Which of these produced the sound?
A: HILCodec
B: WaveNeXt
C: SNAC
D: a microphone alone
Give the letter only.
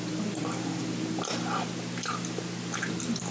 D